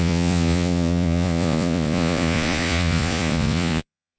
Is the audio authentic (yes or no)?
no